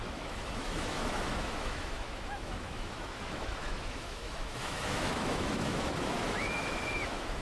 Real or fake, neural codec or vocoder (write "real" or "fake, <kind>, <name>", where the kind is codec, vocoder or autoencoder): fake, autoencoder, DAC-VAE